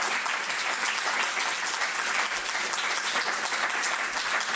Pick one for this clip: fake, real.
real